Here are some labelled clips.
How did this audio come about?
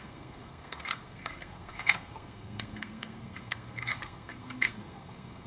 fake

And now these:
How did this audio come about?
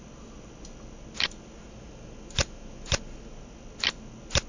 real